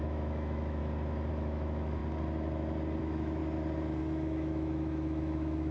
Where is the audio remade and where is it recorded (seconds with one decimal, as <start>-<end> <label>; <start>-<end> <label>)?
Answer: 0.0-0.8 remade; 0.8-1.3 recorded; 1.3-2.0 remade; 2.0-3.0 recorded; 3.0-3.4 remade; 3.4-4.0 recorded; 4.0-5.7 remade